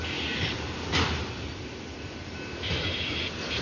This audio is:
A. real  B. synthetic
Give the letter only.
A